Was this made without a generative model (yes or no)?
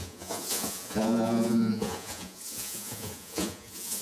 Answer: no